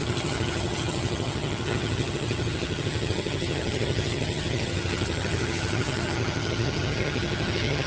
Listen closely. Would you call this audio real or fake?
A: fake